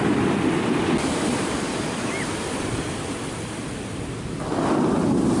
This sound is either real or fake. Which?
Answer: real